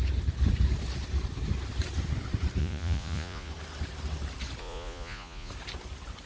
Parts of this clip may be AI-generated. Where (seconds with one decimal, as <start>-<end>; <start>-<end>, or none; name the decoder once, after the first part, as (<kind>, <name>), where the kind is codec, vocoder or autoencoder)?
2.6-3.5 (vocoder, Vocos); 4.6-5.5